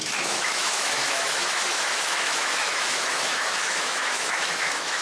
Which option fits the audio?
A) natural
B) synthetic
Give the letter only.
B